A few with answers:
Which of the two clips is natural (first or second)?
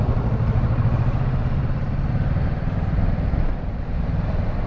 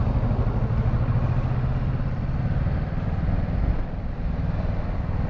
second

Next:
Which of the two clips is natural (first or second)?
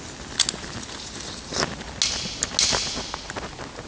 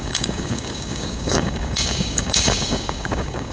first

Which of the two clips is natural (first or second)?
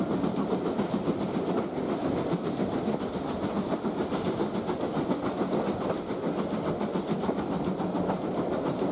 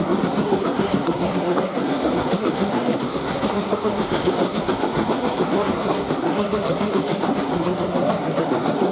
first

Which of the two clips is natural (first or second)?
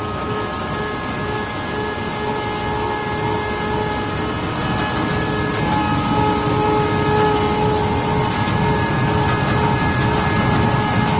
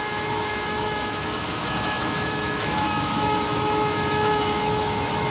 first